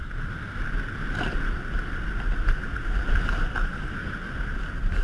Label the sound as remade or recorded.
recorded